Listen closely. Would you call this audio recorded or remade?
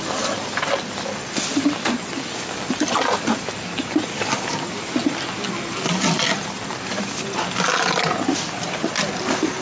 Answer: recorded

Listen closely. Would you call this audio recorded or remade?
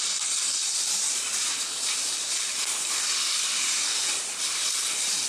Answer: recorded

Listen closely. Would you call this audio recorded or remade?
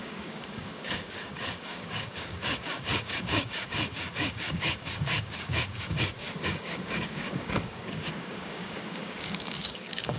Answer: remade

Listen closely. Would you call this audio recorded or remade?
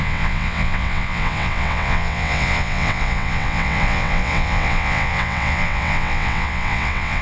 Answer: remade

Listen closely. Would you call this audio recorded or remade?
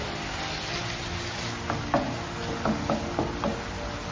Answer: recorded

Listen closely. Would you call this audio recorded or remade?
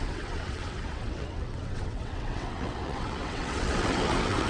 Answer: remade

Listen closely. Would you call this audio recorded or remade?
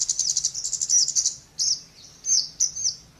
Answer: recorded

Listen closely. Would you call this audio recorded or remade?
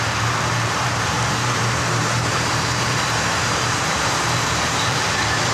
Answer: remade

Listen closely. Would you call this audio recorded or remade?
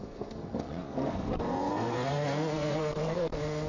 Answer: remade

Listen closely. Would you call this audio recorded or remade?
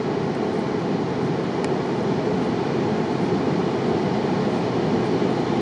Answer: recorded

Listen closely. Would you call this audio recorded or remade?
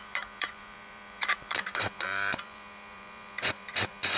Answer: remade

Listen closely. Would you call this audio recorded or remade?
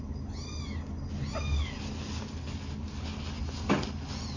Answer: recorded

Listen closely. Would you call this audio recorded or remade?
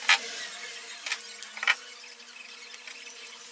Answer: recorded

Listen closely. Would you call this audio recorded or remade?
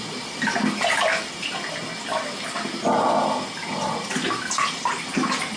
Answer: recorded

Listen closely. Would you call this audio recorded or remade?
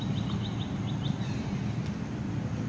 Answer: recorded